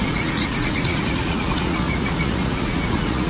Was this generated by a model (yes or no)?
yes